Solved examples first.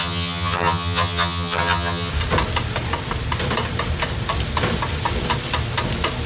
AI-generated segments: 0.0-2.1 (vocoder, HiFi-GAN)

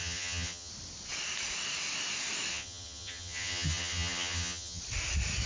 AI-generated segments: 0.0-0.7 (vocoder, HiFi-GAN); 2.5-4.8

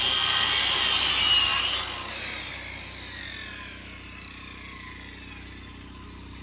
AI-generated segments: none

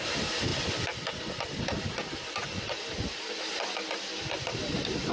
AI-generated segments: none

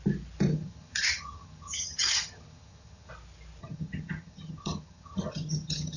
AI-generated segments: 0.5-3.1 (vocoder, HiFi-GAN); 3.6-6.0

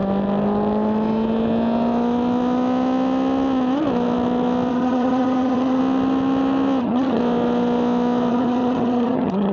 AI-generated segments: 4.7-5.8 (vocoder, HiFi-GAN); 6.8-7.2; 8.3-9.5

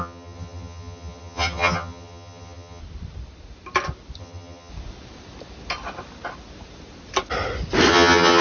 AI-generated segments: 0.0-2.8 (vocoder, HiFi-GAN); 4.2-4.7; 7.9-8.4

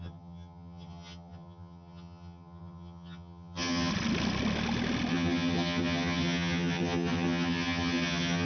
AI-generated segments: 0.0-3.9 (vocoder, HiFi-GAN); 5.1-8.5